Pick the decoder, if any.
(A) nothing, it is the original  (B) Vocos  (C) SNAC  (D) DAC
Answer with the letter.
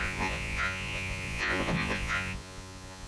B